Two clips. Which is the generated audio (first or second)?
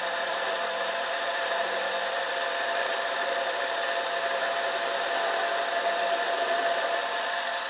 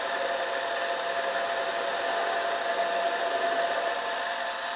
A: first